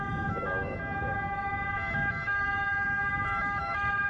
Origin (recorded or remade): remade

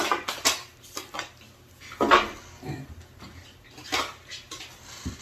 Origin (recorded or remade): recorded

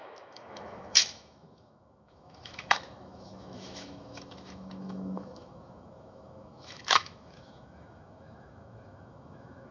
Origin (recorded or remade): remade